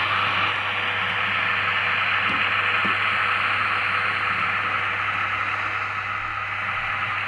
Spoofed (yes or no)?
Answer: no